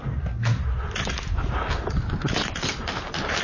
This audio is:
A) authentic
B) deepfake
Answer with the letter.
A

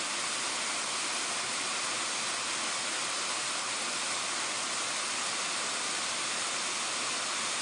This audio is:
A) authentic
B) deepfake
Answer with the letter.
A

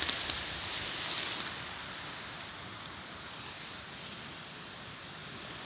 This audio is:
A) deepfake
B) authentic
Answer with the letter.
B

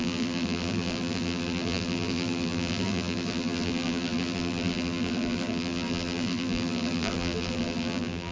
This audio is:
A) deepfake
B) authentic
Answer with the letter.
A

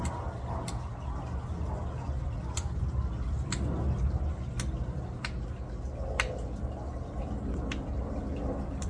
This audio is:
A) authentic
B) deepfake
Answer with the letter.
A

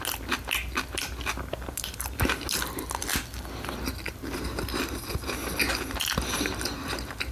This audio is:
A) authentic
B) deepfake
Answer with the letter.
A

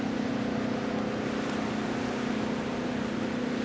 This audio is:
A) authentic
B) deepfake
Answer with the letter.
A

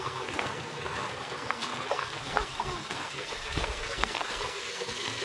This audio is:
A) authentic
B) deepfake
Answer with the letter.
B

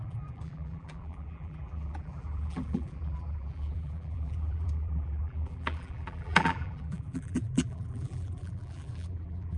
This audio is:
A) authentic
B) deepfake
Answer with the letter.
B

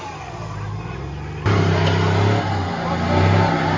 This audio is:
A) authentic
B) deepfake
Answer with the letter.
A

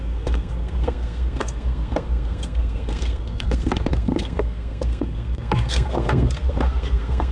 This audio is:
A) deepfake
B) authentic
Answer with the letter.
A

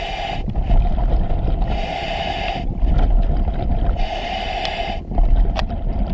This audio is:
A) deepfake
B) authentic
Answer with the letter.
B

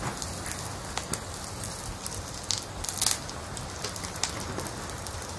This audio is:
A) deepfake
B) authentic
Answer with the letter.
B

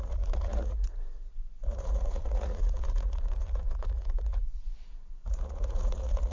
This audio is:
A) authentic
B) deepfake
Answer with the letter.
B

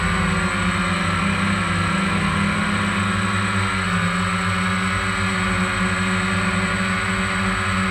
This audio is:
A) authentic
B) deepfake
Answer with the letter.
A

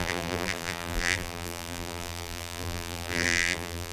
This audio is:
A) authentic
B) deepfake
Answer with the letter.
B